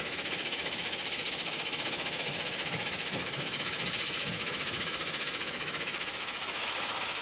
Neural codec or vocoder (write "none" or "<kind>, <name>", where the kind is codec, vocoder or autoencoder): autoencoder, DAC-VAE